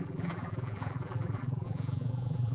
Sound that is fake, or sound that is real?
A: fake